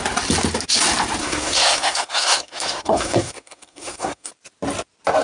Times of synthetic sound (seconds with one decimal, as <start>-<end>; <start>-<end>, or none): 1.2-4.3